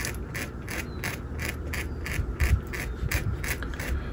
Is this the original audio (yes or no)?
yes